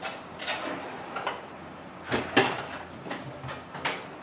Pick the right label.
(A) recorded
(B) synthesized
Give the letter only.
A